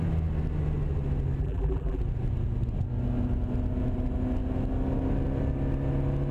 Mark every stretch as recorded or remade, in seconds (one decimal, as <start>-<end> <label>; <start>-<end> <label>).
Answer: 0.0-1.4 recorded; 1.4-2.0 remade; 2.0-6.3 recorded